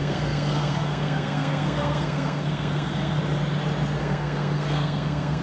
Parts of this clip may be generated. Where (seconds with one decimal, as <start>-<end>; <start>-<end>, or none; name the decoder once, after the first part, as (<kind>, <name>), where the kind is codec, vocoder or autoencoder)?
0.0-3.2 (codec, SNAC); 4.0-5.4